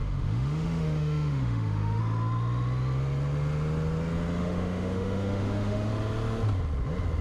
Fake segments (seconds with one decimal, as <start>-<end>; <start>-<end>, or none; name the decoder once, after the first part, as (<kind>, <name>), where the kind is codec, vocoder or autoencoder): 0.0-2.0 (autoencoder, DAC-VAE); 4.4-5.9